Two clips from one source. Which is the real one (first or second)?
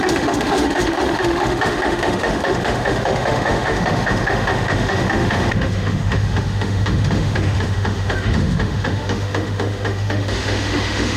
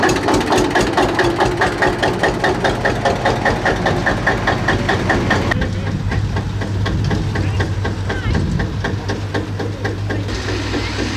second